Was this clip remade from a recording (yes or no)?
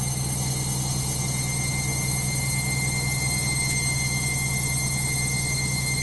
no